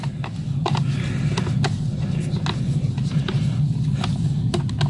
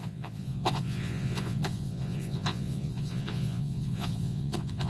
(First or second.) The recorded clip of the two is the first